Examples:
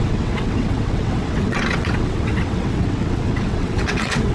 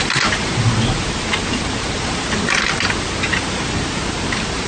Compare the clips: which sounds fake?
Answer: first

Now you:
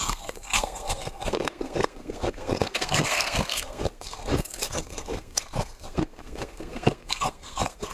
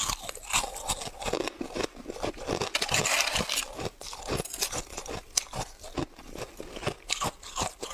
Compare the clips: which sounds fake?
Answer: first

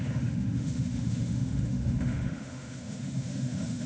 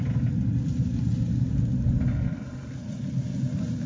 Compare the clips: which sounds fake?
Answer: first